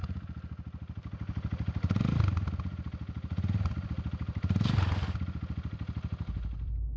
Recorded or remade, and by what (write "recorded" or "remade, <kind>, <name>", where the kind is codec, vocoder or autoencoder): recorded